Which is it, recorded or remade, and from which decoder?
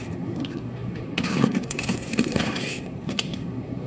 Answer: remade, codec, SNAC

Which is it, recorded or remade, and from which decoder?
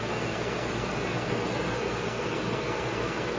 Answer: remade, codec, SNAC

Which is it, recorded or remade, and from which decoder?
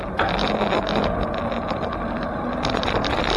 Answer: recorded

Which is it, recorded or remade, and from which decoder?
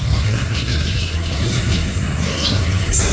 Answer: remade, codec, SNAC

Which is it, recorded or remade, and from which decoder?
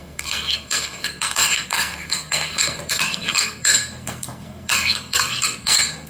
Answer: remade, codec, SNAC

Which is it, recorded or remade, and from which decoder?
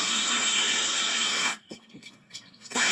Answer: remade, codec, SNAC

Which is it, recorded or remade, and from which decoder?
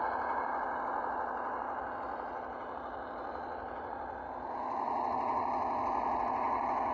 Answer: recorded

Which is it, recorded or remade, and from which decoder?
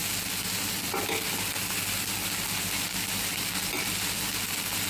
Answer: recorded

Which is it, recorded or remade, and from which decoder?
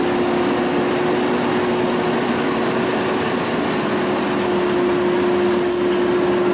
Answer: recorded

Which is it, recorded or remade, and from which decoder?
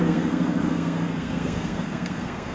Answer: remade, codec, SNAC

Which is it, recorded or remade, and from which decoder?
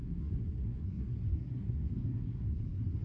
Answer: remade, codec, SNAC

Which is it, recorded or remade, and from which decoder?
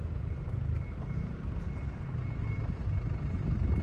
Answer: recorded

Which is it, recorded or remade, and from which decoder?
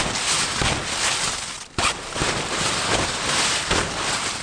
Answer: recorded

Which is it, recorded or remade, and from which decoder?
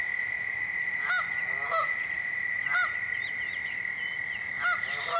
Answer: recorded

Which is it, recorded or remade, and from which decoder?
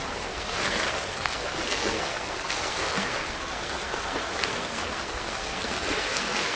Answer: remade, codec, SNAC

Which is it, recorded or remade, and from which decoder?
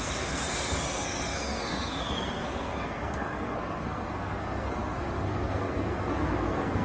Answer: remade, codec, SNAC